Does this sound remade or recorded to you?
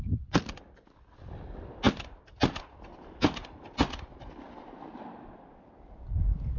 recorded